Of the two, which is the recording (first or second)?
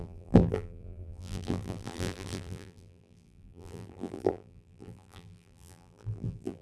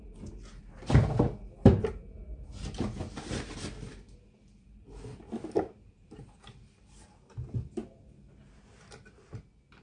second